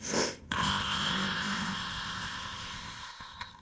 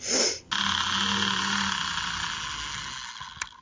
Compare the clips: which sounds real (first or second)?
second